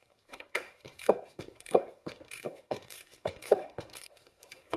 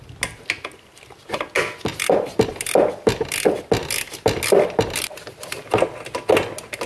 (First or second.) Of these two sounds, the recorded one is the second